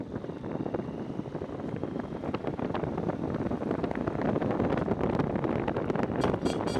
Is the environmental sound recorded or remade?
recorded